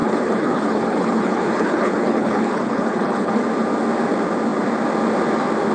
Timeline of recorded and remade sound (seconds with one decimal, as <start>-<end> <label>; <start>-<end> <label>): 0.0-3.4 remade; 3.4-5.7 recorded